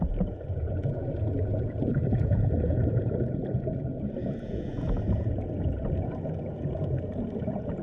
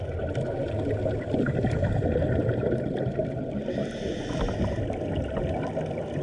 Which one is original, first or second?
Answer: second